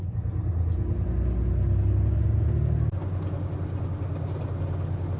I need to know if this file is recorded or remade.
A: recorded